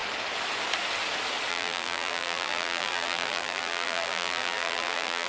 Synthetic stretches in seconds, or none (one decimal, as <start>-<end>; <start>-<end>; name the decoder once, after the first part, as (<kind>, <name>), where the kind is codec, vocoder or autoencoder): 1.5-5.3 (vocoder, BigVGAN v2)

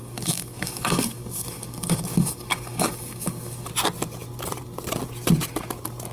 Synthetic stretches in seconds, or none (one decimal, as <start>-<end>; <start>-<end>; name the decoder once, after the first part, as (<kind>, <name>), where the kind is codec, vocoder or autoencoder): 0.0-3.7 (codec, DAC)